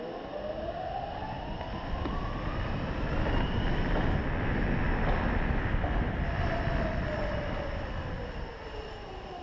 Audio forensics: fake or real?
real